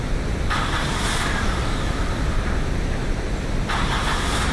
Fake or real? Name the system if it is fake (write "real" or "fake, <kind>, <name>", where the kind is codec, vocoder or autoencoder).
fake, vocoder, BigVGAN v2